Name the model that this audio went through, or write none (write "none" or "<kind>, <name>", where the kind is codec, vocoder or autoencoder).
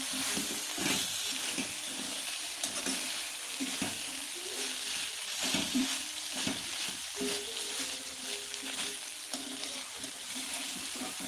vocoder, BigVGAN v2